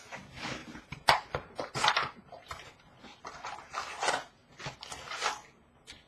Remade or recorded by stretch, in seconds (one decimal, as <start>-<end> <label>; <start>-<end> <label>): 0.0-0.6 recorded; 0.6-2.7 remade; 2.7-6.1 recorded